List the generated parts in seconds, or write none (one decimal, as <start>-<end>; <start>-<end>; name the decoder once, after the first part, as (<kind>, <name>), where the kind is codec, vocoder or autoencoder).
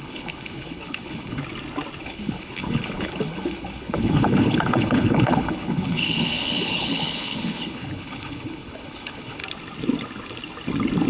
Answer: 0.0-1.4 (codec, HILCodec); 2.0-9.4